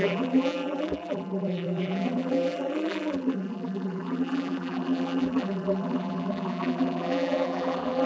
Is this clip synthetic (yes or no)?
yes